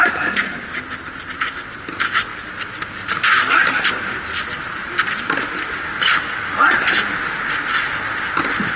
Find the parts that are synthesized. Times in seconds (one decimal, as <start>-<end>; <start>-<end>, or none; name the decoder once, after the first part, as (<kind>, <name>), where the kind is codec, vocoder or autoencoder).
none